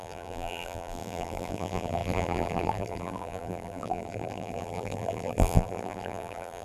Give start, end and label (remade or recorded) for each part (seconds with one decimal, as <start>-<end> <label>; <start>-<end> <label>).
0.0-6.6 remade